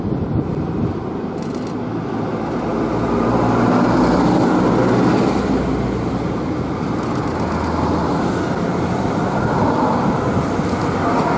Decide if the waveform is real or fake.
real